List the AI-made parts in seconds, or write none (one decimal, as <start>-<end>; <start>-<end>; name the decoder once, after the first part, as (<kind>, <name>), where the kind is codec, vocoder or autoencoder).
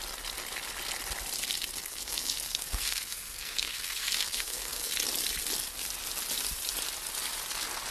1.9-4.9 (codec, SNAC)